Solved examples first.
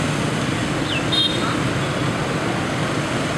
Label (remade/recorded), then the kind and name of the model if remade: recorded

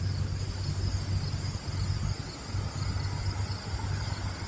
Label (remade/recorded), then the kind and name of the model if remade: recorded